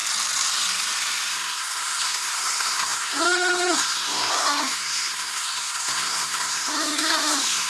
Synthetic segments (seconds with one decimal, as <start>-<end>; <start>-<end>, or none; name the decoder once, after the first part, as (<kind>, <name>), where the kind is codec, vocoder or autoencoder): 1.3-7.7 (codec, SNAC)